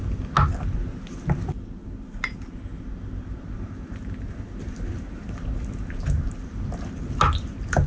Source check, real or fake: real